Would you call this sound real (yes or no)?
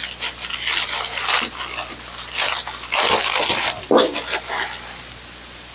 yes